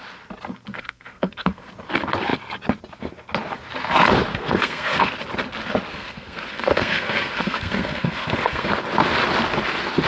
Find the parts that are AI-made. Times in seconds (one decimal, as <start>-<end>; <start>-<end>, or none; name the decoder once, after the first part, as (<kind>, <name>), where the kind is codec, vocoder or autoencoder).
0.7-1.7 (codec, SNAC); 4.3-5.1; 5.9-8.7